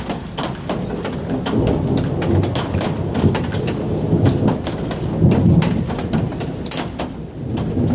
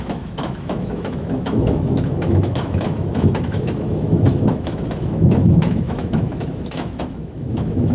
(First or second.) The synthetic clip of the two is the second